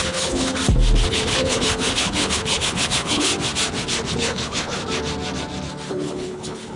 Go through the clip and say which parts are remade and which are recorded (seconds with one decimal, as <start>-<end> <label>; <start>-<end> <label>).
0.0-0.6 remade; 0.6-1.1 recorded; 1.1-3.3 remade; 3.3-4.1 recorded; 4.1-4.8 remade; 4.8-5.9 recorded; 5.9-6.8 remade